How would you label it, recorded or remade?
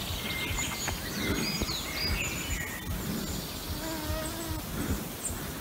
recorded